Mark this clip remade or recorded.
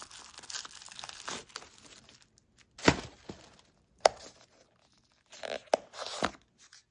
recorded